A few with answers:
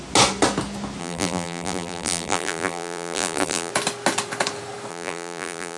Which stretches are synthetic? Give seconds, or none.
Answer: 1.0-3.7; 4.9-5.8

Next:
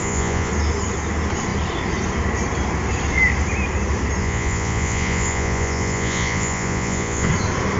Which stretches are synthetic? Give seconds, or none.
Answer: 0.0-0.5; 4.2-7.3

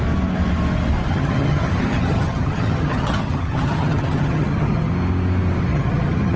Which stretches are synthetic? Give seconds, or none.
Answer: 1.1-4.9; 5.7-6.4

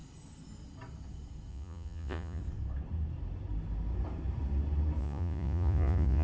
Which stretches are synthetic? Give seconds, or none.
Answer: 1.5-2.4; 5.0-6.2

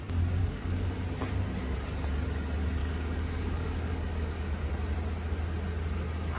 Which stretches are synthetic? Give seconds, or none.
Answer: 0.4-0.9; 2.8-4.7

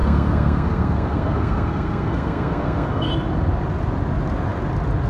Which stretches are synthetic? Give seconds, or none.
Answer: 0.0-3.1

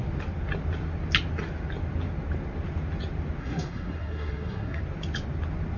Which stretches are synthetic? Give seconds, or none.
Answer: 3.4-4.8